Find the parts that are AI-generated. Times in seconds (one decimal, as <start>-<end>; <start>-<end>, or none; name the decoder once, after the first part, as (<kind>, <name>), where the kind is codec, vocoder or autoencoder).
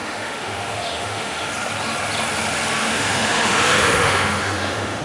0.0-1.5 (autoencoder, DAC-VAE); 2.8-5.0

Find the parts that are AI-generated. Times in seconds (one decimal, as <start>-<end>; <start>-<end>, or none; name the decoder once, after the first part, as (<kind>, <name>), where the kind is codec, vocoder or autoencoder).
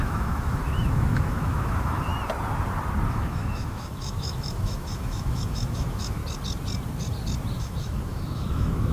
0.0-2.1 (autoencoder, DAC-VAE); 3.1-6.2; 7.6-8.9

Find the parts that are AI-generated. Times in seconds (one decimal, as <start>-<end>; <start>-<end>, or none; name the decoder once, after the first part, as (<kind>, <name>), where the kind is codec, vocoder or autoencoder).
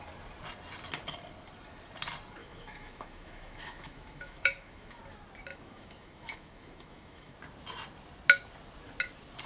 2.4-5.0 (autoencoder, DAC-VAE); 5.5-7.4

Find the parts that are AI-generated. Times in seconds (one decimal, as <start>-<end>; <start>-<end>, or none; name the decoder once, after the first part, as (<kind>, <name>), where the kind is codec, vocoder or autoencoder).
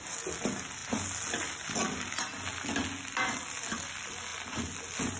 none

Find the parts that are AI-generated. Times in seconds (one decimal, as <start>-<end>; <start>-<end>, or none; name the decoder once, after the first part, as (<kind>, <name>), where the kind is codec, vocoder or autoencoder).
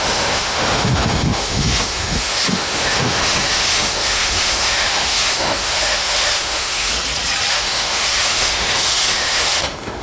0.0-6.9 (autoencoder, DAC-VAE); 7.5-10.0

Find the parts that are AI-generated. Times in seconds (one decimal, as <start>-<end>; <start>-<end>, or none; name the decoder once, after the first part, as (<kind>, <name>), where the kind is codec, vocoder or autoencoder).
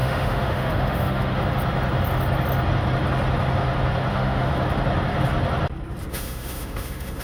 0.0-1.4 (autoencoder, DAC-VAE); 4.1-4.5; 6.1-7.2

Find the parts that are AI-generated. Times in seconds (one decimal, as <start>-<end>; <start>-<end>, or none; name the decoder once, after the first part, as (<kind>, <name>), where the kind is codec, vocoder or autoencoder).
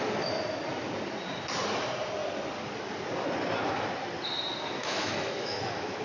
4.8-6.0 (autoencoder, DAC-VAE)